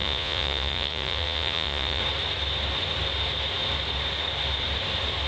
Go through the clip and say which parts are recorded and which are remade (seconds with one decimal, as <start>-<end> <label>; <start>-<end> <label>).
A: 0.0-2.0 remade; 2.0-5.3 recorded